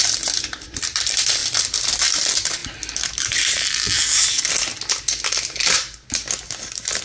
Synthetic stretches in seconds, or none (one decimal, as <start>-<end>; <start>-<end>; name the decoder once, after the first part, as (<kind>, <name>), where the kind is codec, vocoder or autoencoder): 0.0-2.6 (vocoder, BigVGAN v2)

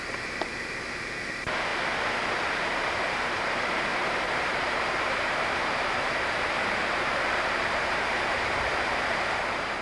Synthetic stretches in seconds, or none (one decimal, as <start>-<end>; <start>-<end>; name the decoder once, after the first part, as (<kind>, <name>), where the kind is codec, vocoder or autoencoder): 0.0-1.7 (vocoder, BigVGAN v2); 2.4-9.8

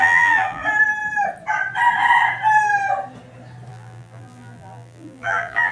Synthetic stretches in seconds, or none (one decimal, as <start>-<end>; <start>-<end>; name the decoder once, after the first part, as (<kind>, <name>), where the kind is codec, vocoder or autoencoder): 0.0-0.6 (vocoder, BigVGAN v2); 3.7-5.7

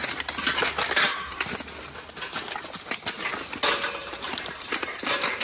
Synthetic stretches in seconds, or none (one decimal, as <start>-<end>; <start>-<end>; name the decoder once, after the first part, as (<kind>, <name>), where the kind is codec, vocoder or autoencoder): 4.0-5.4 (vocoder, BigVGAN v2)

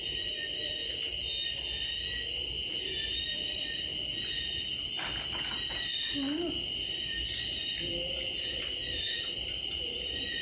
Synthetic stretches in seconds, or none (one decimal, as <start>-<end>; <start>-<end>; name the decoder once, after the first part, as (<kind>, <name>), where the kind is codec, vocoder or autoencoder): 0.0-0.8 (vocoder, BigVGAN v2); 2.7-3.9; 6.5-10.4

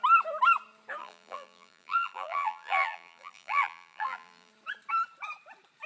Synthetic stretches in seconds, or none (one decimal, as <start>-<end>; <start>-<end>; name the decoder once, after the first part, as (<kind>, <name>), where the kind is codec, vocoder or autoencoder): 1.0-4.5 (vocoder, BigVGAN v2)